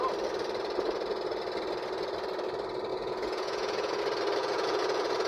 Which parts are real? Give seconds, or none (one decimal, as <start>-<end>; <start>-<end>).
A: 0.0-2.9; 4.0-4.4